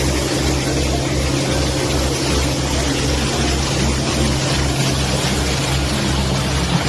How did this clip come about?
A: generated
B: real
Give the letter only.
B